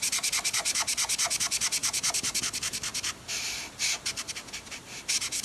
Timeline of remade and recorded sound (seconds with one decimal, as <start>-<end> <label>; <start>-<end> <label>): 0.0-1.8 recorded; 1.8-2.4 remade; 2.4-5.4 recorded